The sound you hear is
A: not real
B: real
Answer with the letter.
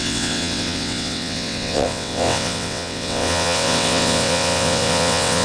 A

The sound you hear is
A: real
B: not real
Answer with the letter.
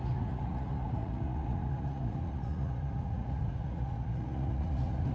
B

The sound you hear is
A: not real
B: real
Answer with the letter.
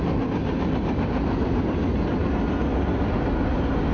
B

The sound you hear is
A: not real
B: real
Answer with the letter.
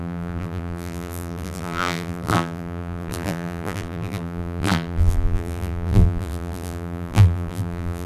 A